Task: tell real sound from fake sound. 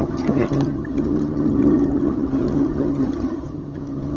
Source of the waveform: fake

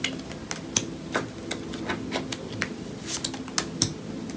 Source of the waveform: real